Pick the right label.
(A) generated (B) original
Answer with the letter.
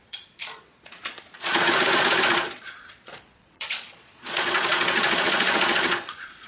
A